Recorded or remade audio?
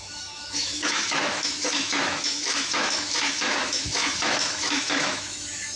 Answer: remade